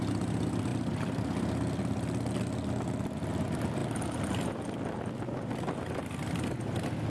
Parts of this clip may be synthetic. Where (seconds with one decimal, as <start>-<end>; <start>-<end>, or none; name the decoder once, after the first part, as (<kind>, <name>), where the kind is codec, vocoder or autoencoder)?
none